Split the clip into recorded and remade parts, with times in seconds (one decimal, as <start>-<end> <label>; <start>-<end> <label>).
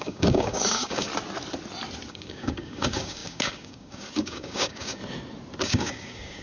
0.0-1.1 remade; 1.1-2.1 recorded; 2.1-5.0 remade; 5.0-5.6 recorded; 5.6-6.4 remade